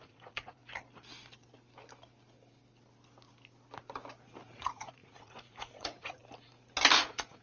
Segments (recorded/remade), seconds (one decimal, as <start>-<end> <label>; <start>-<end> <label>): 0.0-0.6 remade; 0.6-4.6 recorded; 4.6-6.2 remade; 6.2-7.0 recorded; 7.0-7.4 remade